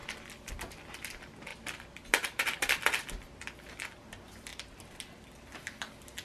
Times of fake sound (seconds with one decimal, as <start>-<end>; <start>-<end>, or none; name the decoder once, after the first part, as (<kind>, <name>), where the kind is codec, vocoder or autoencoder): none